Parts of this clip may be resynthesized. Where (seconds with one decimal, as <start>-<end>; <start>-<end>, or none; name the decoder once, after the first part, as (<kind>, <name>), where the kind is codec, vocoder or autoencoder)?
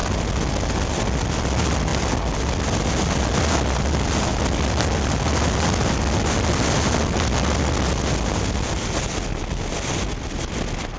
none